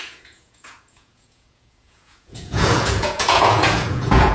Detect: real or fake fake